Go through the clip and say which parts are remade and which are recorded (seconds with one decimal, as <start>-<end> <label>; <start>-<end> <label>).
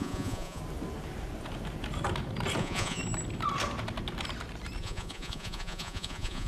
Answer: 0.0-0.6 remade; 0.6-2.6 recorded; 2.6-3.0 remade; 3.0-4.8 recorded; 4.8-6.5 remade